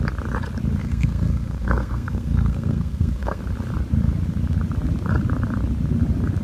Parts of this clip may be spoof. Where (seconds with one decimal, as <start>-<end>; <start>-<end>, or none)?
0.8-3.4